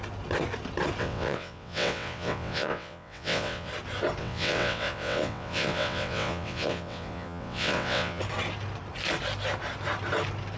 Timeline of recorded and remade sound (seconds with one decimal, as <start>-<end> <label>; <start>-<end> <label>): 0.0-1.0 recorded; 1.0-3.7 remade; 3.7-4.2 recorded; 4.2-8.2 remade; 8.2-10.6 recorded